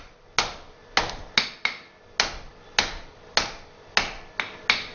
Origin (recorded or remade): recorded